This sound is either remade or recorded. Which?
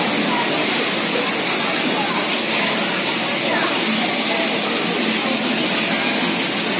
recorded